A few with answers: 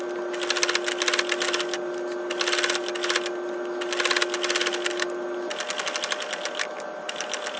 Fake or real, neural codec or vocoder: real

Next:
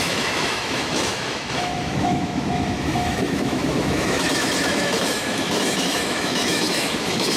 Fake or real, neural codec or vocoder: fake, autoencoder, DAC-VAE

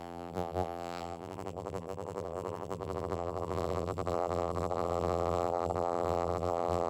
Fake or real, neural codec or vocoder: fake, vocoder, BigVGAN v2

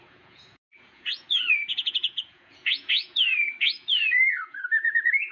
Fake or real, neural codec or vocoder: fake, vocoder, Vocos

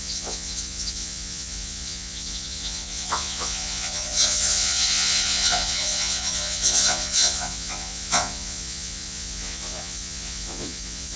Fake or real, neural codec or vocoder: fake, vocoder, Vocos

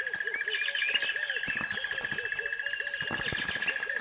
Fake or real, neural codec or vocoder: real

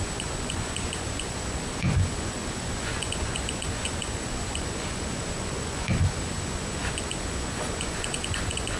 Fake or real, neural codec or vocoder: fake, vocoder, Vocos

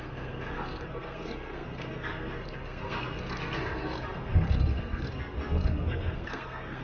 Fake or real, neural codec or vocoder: fake, codec, SNAC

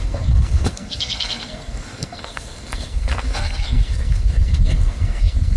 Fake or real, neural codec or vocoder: fake, codec, SNAC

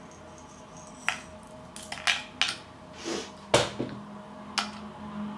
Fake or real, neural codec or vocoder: real